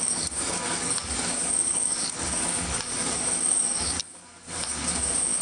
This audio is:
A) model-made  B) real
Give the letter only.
A